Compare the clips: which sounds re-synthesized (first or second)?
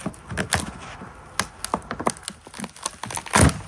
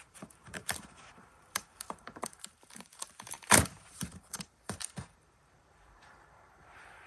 second